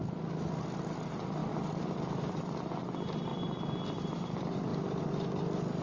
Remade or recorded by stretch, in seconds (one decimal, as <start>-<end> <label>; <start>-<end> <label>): 0.0-5.8 recorded